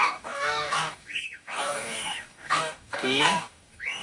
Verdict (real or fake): fake